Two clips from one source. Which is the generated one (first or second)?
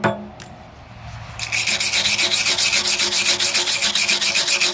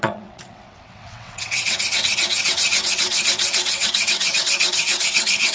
second